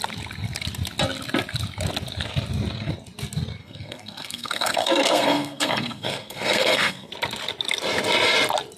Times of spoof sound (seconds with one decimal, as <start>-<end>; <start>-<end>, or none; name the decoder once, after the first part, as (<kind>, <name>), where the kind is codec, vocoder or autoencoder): 3.6-7.1 (codec, SNAC)